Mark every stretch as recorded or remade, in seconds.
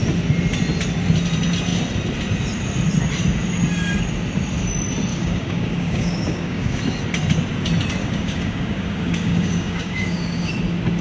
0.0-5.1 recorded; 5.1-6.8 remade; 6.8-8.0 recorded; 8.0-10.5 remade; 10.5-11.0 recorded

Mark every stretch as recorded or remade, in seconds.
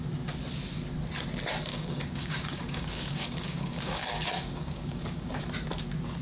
0.0-1.7 recorded; 1.7-5.4 remade; 5.4-6.2 recorded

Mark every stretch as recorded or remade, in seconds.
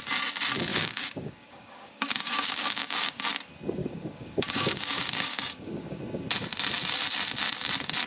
0.0-0.7 recorded; 0.7-3.2 remade; 3.2-3.8 recorded; 3.8-6.0 remade; 6.0-8.1 recorded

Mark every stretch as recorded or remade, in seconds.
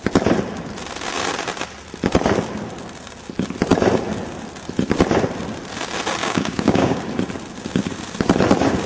0.0-6.2 recorded; 6.2-7.0 remade; 7.0-8.9 recorded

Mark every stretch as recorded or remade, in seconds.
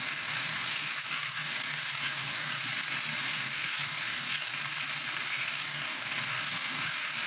0.0-2.6 remade; 2.6-3.2 recorded; 3.2-4.5 remade; 4.5-5.3 recorded; 5.3-7.3 remade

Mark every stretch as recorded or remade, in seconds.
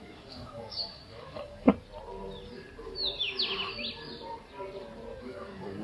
0.0-1.7 remade; 1.7-5.2 recorded; 5.2-5.8 remade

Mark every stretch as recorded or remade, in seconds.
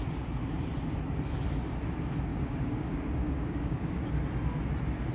0.0-2.3 recorded; 2.3-4.1 remade; 4.1-5.1 recorded